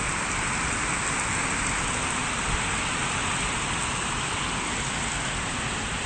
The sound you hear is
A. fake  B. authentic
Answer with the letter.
B